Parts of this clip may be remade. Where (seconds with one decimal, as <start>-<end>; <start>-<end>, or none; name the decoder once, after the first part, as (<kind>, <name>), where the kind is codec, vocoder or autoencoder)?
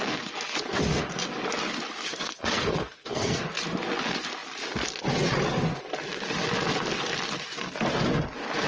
2.1-3.4 (codec, SNAC)